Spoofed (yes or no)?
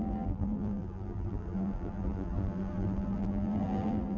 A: yes